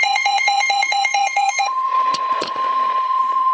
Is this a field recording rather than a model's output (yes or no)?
no